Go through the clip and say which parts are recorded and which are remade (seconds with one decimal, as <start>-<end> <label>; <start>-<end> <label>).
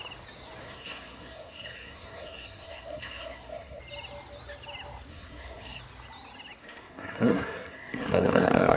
0.0-0.6 recorded; 0.6-3.8 remade; 3.8-5.1 recorded; 5.1-5.8 remade; 5.8-6.6 recorded; 6.6-8.8 remade